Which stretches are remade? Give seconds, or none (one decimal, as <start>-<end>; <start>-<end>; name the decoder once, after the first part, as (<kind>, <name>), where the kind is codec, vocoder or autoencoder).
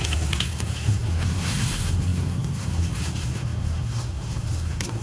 0.0-5.0 (codec, SNAC)